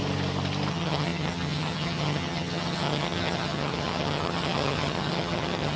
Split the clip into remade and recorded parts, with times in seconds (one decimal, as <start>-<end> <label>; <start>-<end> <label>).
0.0-0.7 recorded; 0.7-5.8 remade